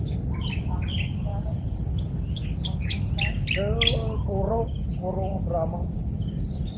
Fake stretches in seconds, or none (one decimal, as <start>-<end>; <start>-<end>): 1.3-1.9